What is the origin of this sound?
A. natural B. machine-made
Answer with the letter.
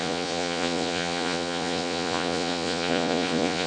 B